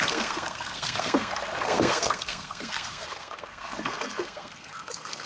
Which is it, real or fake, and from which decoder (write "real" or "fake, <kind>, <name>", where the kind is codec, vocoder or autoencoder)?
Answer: fake, codec, SNAC